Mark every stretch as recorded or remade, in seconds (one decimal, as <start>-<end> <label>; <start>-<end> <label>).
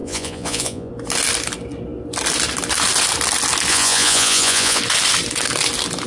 0.0-0.9 remade; 0.9-3.7 recorded; 3.7-4.8 remade; 4.8-6.1 recorded